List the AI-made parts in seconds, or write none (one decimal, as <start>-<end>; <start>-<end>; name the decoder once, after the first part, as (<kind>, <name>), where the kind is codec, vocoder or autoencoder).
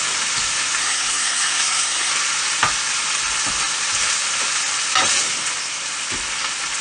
0.8-2.1 (codec, SNAC)